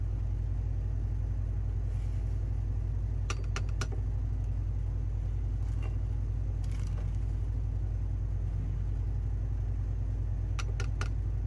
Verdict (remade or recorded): recorded